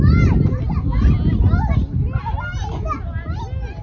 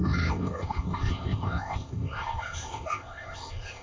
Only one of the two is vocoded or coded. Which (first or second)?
second